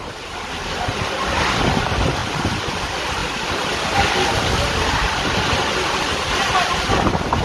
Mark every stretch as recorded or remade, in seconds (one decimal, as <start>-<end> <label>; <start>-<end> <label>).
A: 0.0-7.4 recorded